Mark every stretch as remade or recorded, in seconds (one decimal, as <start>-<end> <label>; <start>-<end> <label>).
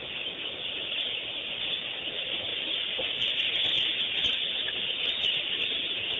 0.0-6.2 recorded